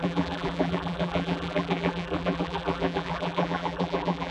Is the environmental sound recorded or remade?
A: remade